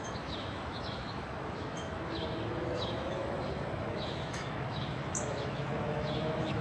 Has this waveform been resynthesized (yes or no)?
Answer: yes